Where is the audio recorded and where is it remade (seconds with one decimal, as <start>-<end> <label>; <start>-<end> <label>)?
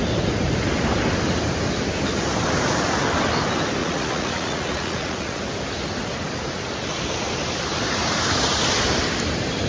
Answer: 0.0-3.8 recorded; 3.8-5.4 remade; 5.4-9.7 recorded